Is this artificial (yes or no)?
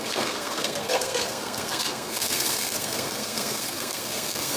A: yes